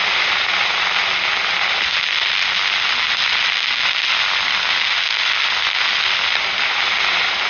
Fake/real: real